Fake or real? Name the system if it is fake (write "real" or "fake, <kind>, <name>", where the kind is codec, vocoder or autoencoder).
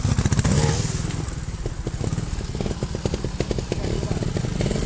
real